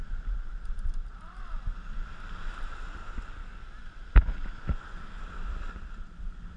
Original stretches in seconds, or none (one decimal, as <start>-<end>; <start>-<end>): 1.4-6.6